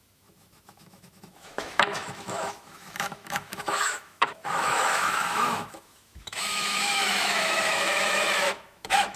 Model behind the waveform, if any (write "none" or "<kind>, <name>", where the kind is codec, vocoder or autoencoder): autoencoder, DAC-VAE